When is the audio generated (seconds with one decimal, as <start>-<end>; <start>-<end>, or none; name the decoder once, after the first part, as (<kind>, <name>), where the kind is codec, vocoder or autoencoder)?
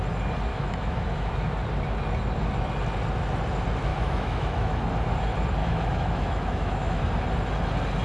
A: 0.5-1.3 (autoencoder, DAC-VAE); 3.9-4.8; 5.6-7.0